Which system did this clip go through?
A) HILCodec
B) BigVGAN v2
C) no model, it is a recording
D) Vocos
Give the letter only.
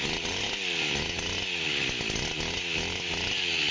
C